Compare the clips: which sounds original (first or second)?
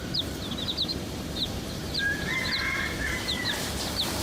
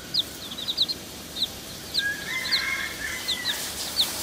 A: second